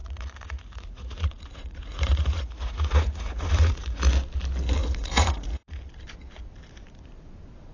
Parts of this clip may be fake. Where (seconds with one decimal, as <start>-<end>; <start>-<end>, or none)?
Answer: 0.0-4.0; 4.8-5.8